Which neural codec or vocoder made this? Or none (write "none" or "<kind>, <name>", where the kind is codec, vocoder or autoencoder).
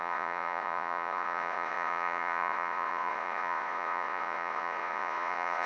vocoder, Vocos